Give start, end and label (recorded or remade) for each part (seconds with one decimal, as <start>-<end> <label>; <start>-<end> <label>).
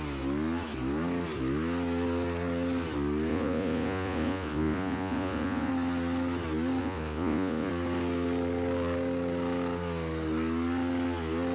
0.0-3.3 recorded; 3.3-5.7 remade; 5.7-6.8 recorded; 6.8-7.7 remade; 7.7-11.5 recorded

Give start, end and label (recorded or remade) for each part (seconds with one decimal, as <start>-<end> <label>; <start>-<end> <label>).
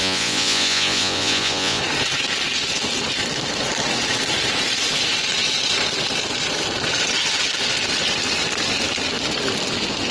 0.0-1.8 remade; 1.8-10.1 recorded